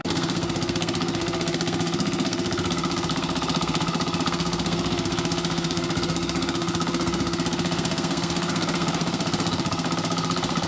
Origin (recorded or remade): remade